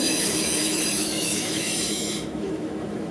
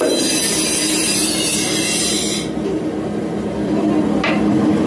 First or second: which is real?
second